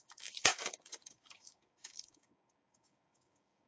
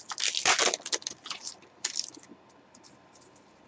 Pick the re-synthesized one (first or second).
first